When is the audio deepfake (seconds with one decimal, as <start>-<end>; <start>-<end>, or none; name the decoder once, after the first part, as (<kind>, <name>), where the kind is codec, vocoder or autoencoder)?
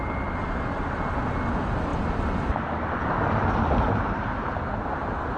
none